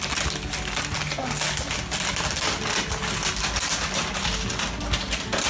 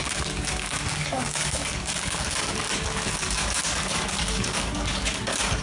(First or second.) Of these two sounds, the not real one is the second